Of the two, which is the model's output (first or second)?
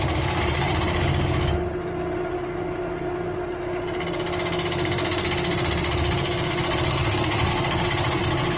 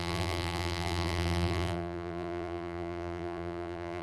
second